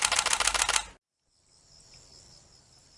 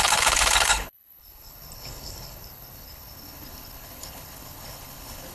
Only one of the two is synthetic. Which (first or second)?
second